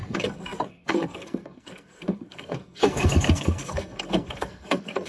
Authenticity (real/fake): fake